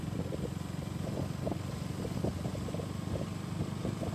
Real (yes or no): yes